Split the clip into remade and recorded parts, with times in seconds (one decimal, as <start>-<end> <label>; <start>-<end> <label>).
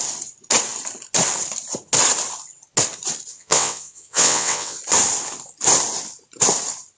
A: 0.0-3.3 recorded; 3.3-4.8 remade; 4.8-7.0 recorded